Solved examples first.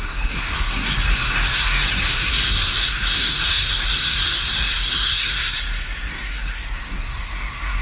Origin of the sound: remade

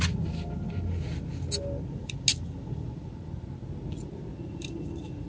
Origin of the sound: recorded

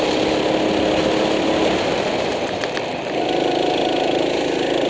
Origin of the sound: recorded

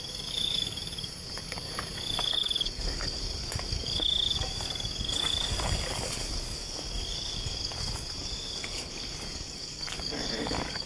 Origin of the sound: remade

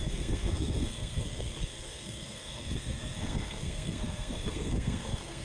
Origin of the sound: remade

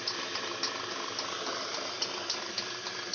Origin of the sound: recorded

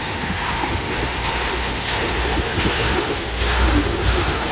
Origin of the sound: remade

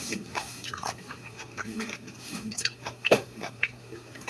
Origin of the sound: remade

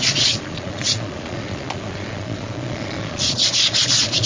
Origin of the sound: remade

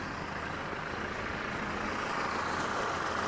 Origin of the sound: recorded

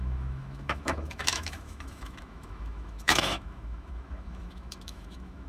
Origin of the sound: remade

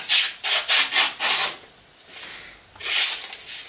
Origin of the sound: recorded